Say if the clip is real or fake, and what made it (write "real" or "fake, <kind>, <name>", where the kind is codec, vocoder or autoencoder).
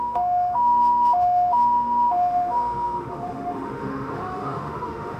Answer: fake, autoencoder, DAC-VAE